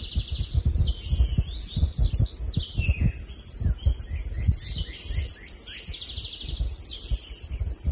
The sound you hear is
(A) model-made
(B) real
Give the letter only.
B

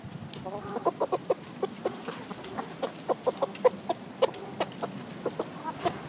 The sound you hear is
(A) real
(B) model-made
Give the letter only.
A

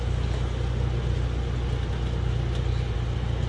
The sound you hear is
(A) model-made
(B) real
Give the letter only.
B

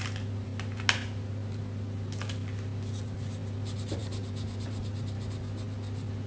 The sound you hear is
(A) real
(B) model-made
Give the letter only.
A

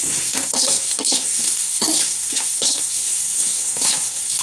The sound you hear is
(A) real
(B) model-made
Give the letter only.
B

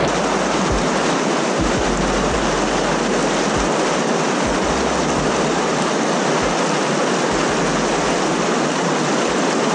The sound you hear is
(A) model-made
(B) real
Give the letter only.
B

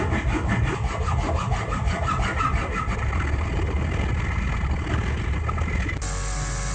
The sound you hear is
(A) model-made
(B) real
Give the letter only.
B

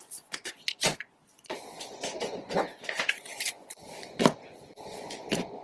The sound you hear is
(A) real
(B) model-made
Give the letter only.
B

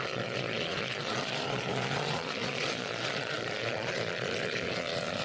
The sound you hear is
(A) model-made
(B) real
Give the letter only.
A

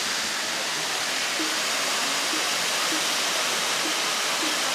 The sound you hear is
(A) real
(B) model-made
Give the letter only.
A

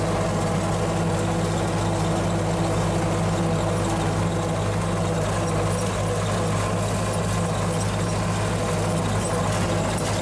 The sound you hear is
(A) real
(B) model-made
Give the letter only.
A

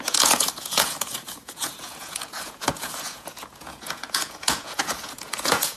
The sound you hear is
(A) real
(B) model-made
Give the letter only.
B